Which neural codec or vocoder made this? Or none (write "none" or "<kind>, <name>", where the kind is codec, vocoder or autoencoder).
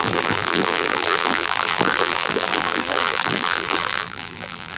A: vocoder, BigVGAN v2